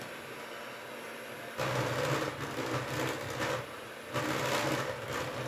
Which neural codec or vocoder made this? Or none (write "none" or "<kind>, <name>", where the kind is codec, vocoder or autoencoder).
none